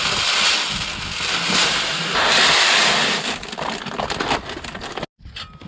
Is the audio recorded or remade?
recorded